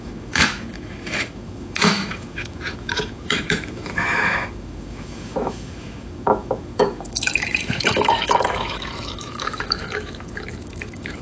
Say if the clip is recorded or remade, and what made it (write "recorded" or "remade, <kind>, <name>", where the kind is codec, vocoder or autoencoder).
remade, autoencoder, DAC-VAE